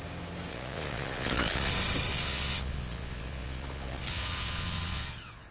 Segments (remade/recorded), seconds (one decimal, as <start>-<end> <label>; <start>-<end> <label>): 0.0-0.5 recorded; 0.5-1.7 remade; 1.7-2.1 recorded; 2.1-5.5 remade